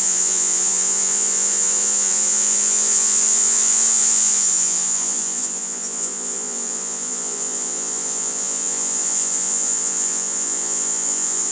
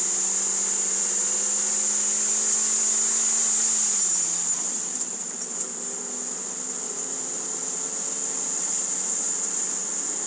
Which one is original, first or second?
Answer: second